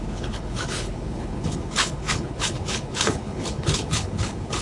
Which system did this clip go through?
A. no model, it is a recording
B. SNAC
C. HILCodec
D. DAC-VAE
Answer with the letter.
C